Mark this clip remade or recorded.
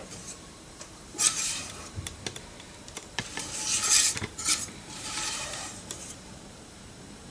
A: remade